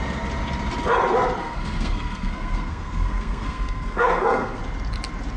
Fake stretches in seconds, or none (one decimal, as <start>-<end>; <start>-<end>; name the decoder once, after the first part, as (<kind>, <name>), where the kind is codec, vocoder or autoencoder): 1.4-4.6 (codec, SNAC)